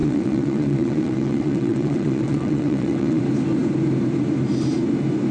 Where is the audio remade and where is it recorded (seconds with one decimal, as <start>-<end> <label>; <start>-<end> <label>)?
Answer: 0.0-3.2 remade; 3.2-5.3 recorded